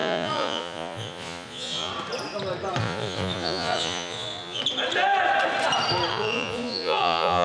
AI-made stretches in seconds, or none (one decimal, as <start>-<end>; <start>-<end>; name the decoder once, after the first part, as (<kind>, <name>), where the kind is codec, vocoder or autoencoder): 0.0-1.9 (vocoder, Vocos); 2.8-4.6; 6.1-7.4